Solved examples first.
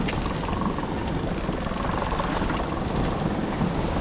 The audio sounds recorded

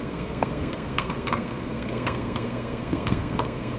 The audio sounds remade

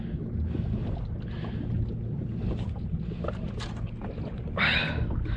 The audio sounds recorded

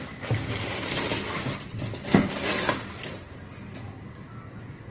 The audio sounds recorded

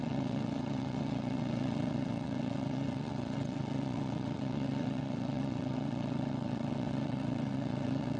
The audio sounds remade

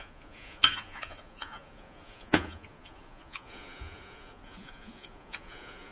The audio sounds remade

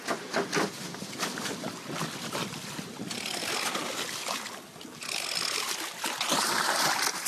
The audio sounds recorded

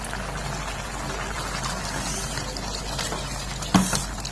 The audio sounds recorded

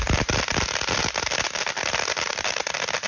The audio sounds remade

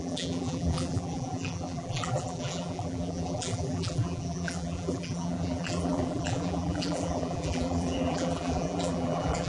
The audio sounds remade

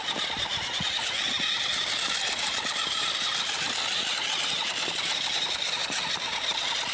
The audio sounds recorded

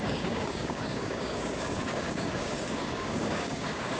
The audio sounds remade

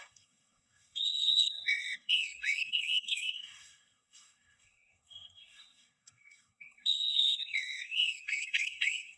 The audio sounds remade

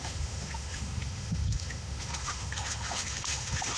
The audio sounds remade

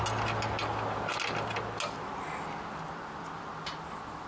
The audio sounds recorded